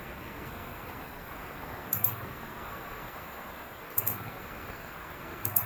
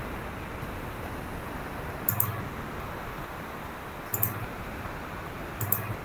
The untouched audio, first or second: second